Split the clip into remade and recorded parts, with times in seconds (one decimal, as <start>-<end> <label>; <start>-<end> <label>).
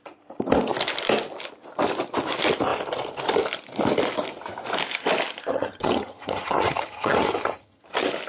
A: 0.0-5.5 recorded; 5.5-7.8 remade; 7.8-8.3 recorded